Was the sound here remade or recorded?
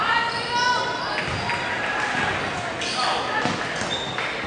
recorded